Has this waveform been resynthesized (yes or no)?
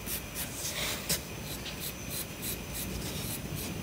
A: no